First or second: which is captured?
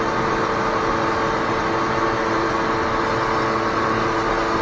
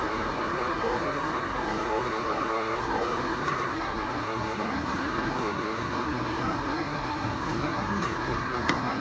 first